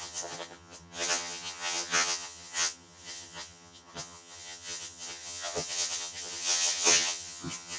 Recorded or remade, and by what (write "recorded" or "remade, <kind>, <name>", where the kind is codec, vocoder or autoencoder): remade, vocoder, HiFi-GAN